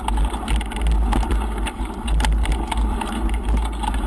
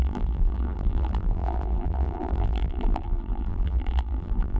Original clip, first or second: first